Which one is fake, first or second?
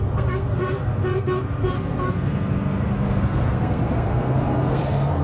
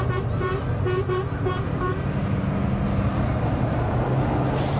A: first